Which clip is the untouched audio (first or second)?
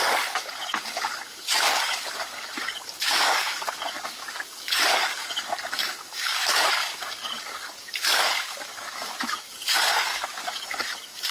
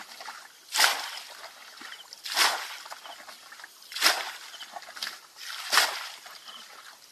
second